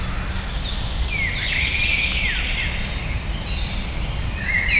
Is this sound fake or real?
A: real